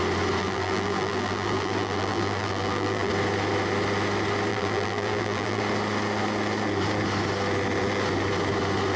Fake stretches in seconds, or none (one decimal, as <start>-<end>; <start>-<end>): 0.4-3.1; 4.5-5.6